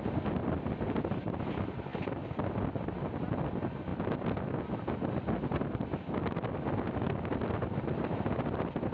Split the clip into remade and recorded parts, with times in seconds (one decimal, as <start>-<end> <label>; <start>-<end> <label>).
0.0-8.9 recorded